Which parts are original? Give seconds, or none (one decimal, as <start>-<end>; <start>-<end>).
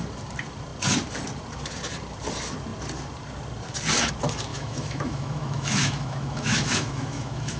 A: 0.0-4.5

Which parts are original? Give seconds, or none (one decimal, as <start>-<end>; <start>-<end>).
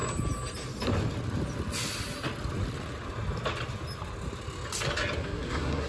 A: 0.0-5.2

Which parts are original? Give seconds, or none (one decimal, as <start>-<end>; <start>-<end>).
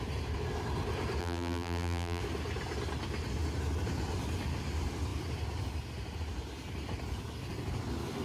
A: 0.0-1.2; 2.2-8.2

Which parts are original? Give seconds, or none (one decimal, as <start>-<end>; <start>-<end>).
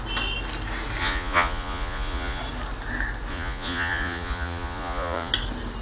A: 0.0-1.0; 2.4-3.3; 5.3-5.8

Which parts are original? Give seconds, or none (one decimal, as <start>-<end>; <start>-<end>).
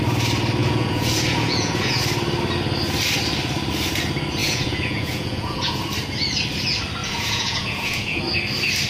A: 0.0-0.6; 2.0-4.4; 5.8-7.0; 8.2-8.9